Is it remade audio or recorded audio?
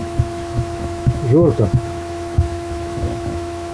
remade